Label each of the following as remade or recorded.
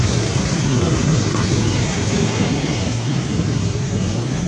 remade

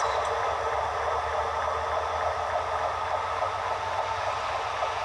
recorded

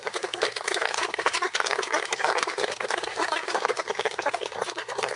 remade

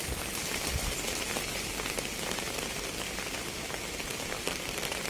recorded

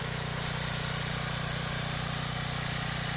recorded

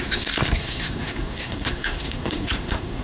remade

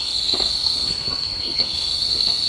remade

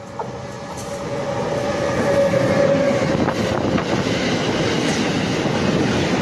recorded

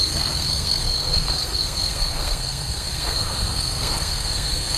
remade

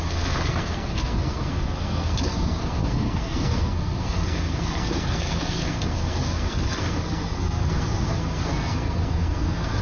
remade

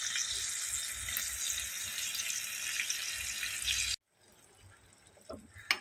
recorded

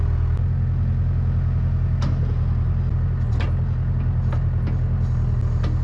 recorded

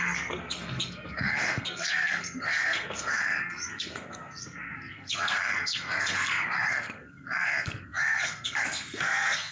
remade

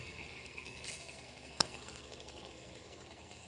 remade